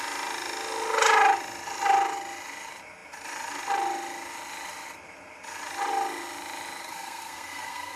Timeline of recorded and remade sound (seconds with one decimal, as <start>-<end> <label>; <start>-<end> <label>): 0.0-6.8 recorded; 6.8-8.0 remade